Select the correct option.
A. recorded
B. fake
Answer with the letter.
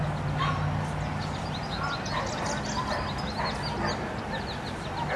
A